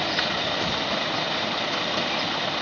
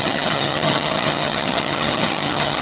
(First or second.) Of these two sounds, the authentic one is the first